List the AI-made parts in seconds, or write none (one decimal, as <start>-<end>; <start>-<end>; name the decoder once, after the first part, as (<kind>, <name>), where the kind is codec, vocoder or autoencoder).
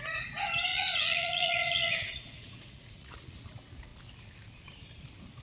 0.7-3.4 (vocoder, Vocos)